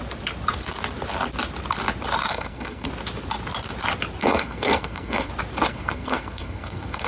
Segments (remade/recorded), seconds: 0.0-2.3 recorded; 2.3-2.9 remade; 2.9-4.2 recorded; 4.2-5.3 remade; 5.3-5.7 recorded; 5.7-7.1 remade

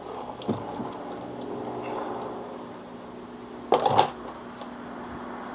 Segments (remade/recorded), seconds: 0.0-5.5 recorded

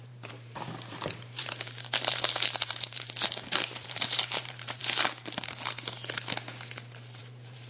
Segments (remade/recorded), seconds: 0.0-4.8 remade; 4.8-7.2 recorded; 7.2-7.7 remade

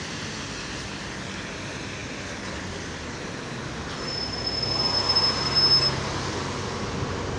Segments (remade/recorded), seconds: 0.0-7.4 recorded

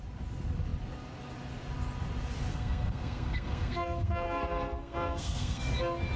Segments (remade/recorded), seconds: 0.0-2.5 recorded; 2.5-5.7 remade; 5.7-6.2 recorded

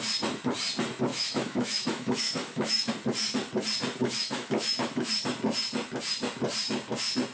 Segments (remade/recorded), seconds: 0.0-1.1 recorded; 1.1-2.9 remade; 2.9-4.0 recorded; 4.0-5.1 remade; 5.1-7.3 recorded